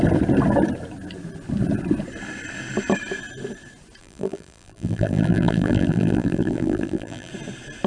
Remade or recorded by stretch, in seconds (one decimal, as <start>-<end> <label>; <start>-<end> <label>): 0.0-4.0 recorded; 4.0-7.3 remade; 7.3-7.9 recorded